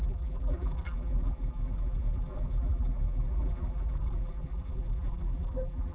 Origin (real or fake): fake